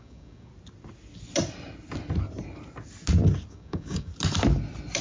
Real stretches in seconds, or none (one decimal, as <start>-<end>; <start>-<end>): 0.5-3.5; 4.1-5.0